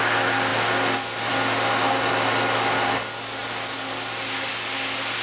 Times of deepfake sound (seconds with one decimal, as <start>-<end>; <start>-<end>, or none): none